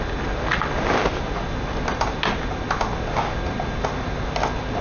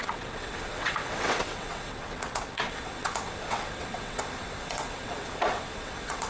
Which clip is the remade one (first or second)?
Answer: second